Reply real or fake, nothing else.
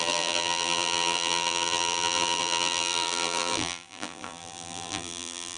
fake